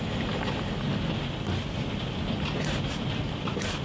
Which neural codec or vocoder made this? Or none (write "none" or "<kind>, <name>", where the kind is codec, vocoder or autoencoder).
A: none